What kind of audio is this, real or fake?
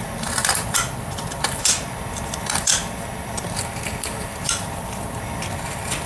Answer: fake